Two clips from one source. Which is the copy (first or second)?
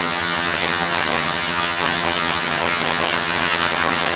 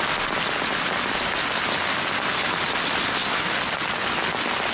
first